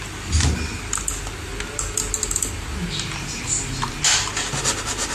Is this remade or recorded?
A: recorded